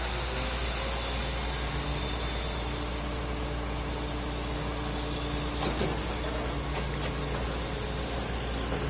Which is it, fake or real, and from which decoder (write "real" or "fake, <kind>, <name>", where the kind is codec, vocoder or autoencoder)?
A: real